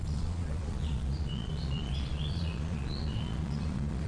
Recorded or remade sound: remade